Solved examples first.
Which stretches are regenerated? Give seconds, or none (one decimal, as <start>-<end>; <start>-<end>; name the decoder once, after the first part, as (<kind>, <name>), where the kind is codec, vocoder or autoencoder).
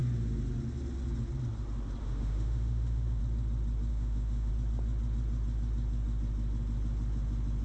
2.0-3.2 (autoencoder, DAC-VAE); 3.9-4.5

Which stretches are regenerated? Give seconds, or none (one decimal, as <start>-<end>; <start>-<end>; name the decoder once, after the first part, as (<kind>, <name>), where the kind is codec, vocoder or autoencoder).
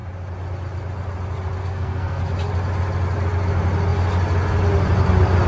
1.6-2.2 (codec, SNAC)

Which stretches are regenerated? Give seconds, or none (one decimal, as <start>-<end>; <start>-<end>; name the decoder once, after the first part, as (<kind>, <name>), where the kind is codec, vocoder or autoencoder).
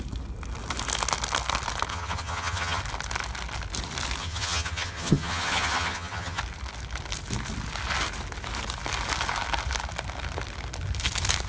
1.9-2.8 (vocoder, HiFi-GAN); 4.2-6.4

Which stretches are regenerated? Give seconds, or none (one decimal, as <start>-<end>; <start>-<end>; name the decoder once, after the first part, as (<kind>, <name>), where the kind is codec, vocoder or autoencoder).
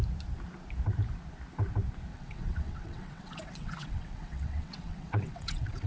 2.1-5.9 (vocoder, WaveNeXt)